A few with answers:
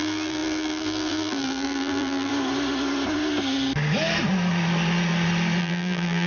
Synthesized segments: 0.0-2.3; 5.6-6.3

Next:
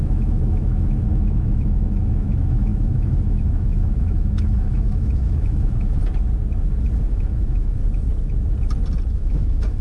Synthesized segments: 0.0-6.0; 7.1-7.8; 9.1-9.8

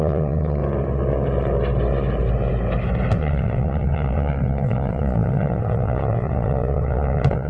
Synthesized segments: 0.0-0.6; 3.2-7.5